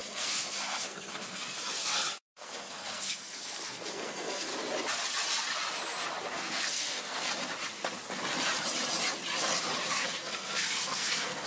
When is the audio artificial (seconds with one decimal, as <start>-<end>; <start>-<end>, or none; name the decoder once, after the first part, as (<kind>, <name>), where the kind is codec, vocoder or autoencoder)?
0.0-4.5 (codec, SNAC); 6.3-7.3; 9.9-11.5

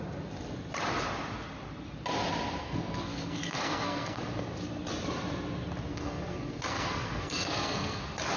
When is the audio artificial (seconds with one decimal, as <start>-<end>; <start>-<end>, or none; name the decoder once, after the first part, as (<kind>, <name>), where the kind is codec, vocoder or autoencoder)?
2.6-4.2 (codec, SNAC); 5.9-8.0

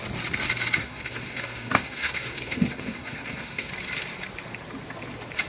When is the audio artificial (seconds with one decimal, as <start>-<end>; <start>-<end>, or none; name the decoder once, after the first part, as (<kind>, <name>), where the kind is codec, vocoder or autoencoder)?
0.8-3.7 (codec, SNAC)

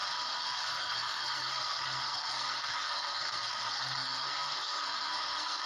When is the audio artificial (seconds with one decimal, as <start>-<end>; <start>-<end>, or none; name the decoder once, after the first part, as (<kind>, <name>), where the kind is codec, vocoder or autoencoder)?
0.0-5.7 (codec, SNAC)

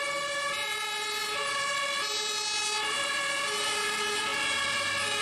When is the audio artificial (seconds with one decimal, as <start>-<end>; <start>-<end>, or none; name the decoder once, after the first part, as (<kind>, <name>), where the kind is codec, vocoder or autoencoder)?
none